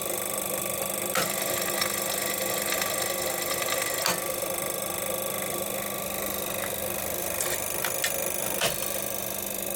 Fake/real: real